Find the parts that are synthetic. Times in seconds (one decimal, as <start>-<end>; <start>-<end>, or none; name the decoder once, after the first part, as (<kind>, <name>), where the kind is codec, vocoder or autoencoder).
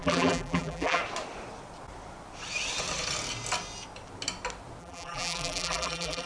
0.0-1.0 (vocoder, BigVGAN v2); 4.8-6.3